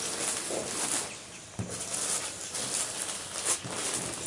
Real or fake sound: real